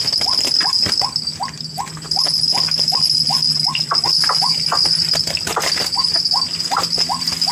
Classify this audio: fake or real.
real